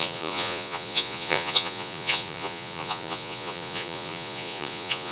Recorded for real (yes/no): no